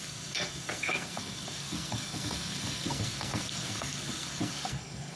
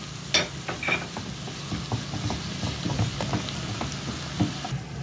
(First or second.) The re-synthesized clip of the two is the first